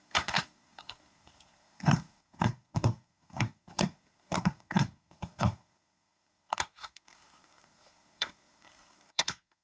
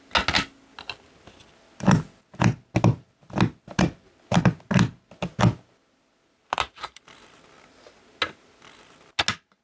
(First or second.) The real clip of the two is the second